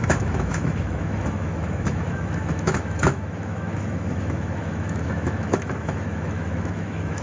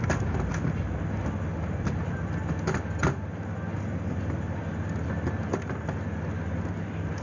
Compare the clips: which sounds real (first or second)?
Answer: second